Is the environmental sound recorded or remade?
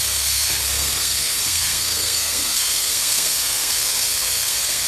remade